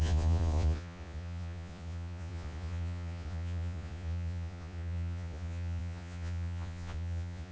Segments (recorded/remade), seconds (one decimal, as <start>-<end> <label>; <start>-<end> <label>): 0.0-7.5 remade